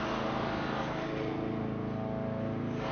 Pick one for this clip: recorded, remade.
recorded